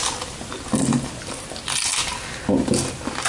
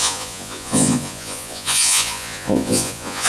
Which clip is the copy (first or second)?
second